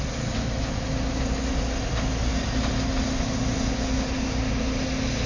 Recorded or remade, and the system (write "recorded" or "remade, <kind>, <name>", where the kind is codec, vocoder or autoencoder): recorded